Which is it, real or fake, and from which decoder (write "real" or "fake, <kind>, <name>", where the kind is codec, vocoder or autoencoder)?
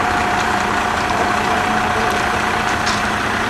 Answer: fake, vocoder, BigVGAN v2